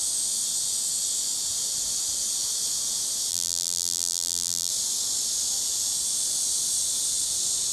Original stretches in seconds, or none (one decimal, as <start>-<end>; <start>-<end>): 0.0-3.3; 4.7-7.7